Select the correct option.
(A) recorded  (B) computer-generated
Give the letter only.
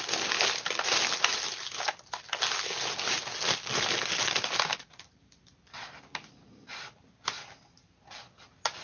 A